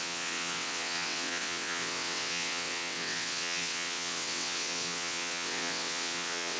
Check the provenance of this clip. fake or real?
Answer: fake